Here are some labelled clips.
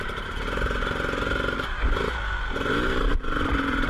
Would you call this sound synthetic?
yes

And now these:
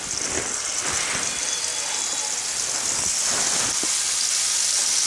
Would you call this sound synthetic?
no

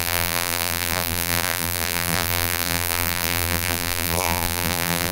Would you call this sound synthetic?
yes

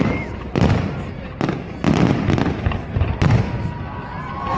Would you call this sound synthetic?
no